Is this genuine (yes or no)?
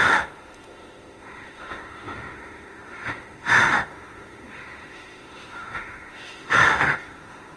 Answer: no